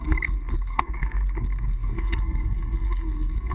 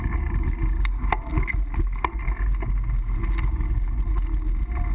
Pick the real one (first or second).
second